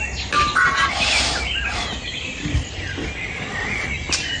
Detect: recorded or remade recorded